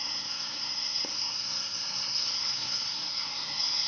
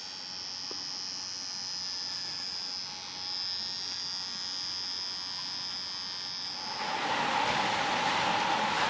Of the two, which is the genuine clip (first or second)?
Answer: second